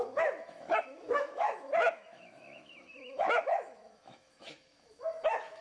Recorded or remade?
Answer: remade